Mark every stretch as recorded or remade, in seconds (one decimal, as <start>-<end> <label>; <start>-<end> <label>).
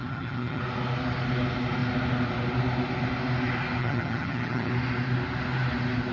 0.0-0.6 remade; 0.6-3.8 recorded; 3.8-4.7 remade; 4.7-6.1 recorded